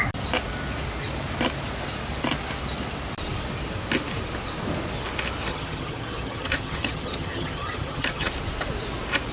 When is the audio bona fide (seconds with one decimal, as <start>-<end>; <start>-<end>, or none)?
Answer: 0.0-5.5; 8.3-9.3